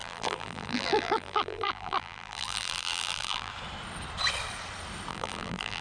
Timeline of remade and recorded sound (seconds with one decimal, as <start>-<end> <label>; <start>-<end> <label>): 0.0-3.5 remade; 3.5-5.1 recorded; 5.1-5.8 remade